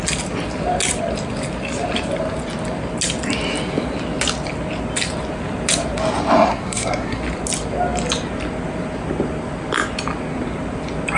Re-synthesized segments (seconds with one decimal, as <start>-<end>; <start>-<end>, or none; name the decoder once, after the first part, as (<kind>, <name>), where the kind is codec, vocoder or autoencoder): 6.5-7.2 (codec, SNAC)